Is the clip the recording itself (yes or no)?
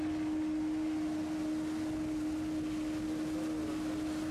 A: yes